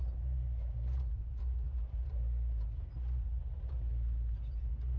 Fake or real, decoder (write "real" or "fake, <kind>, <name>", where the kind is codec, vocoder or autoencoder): real